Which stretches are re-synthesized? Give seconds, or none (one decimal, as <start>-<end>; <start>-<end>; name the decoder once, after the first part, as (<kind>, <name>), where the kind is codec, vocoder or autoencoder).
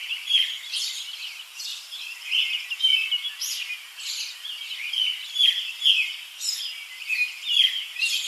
0.0-0.5 (vocoder, BigVGAN v2); 1.7-2.5